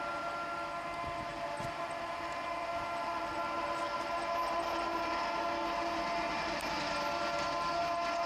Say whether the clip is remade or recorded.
recorded